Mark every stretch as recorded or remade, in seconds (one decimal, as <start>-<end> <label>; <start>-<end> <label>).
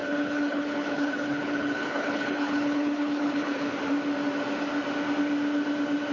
0.0-3.7 remade; 3.7-6.1 recorded